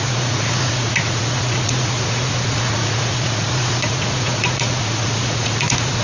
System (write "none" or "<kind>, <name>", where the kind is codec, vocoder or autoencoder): vocoder, Vocos